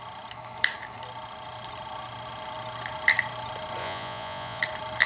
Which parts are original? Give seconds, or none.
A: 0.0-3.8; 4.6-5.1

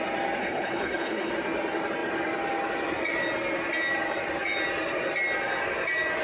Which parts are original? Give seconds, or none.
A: 0.0-0.4; 1.3-6.2

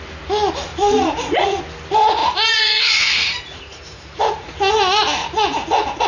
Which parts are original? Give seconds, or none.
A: 0.0-0.7; 1.6-2.2; 4.5-5.2

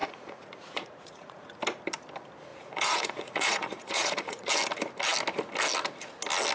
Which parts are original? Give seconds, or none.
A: 1.6-2.5; 4.5-6.5

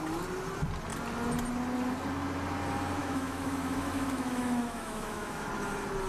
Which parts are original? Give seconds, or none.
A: 0.0-3.0; 5.5-6.1